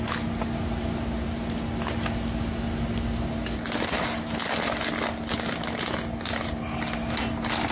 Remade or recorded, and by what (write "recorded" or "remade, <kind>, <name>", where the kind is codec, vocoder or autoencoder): recorded